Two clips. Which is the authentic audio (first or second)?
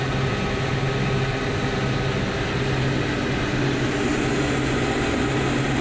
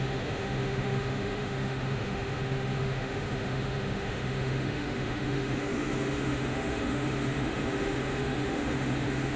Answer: first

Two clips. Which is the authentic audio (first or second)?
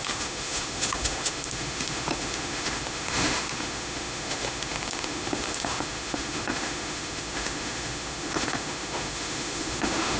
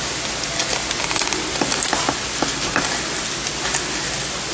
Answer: second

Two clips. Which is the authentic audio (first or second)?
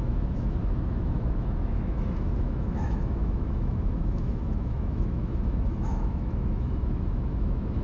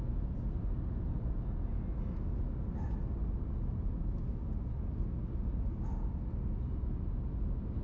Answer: second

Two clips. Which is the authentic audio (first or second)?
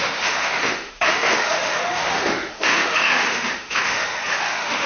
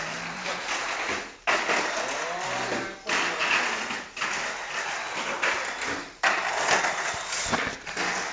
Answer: second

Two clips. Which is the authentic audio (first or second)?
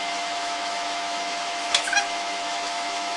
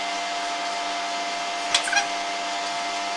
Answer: second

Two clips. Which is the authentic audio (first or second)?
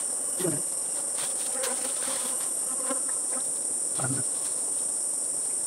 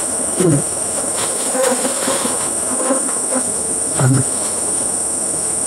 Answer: first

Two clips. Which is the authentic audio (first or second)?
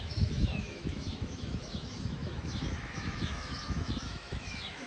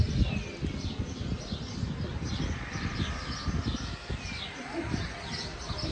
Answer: second